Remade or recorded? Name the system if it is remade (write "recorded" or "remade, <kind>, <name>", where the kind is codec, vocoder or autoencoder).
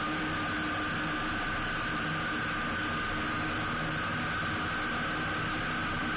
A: recorded